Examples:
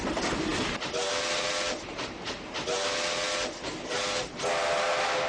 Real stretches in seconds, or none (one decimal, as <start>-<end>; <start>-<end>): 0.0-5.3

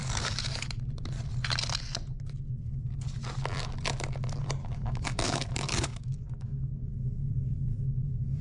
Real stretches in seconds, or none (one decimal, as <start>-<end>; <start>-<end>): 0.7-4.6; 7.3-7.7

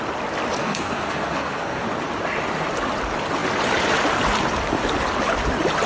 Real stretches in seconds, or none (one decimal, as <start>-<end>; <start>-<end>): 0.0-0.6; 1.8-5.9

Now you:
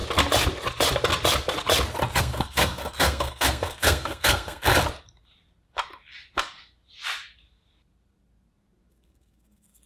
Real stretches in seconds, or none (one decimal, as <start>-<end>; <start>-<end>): 0.0-2.2; 4.7-8.9

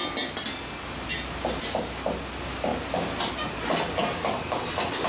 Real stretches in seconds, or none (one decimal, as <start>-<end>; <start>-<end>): 0.0-5.1

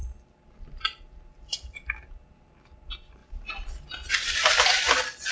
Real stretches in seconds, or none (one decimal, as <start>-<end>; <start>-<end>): 0.0-5.3

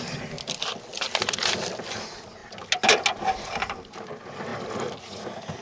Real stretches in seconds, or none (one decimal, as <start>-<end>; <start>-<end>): 0.0-5.6

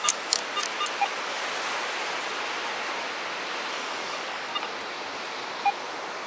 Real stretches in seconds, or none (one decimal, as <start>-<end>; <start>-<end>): 0.4-3.7; 4.5-6.3